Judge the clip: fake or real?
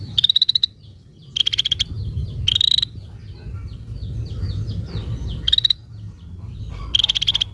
real